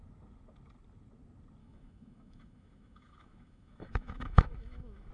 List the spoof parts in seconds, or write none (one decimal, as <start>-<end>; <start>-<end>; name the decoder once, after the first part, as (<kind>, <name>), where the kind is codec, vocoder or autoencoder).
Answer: 1.6-5.1 (autoencoder, DAC-VAE)